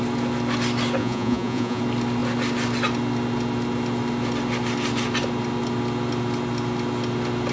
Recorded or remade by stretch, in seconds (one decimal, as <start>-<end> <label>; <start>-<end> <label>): 0.0-1.0 recorded; 1.0-1.8 remade; 1.8-7.5 recorded